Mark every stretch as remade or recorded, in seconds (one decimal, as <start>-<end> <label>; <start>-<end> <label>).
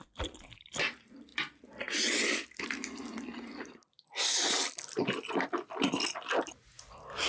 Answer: 0.0-7.3 recorded